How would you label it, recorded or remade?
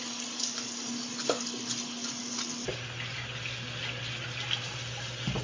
recorded